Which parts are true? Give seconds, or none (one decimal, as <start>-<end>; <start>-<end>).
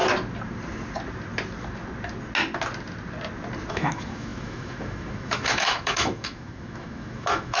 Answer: 0.0-3.7